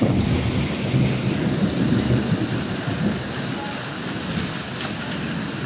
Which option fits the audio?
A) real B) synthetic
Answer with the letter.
A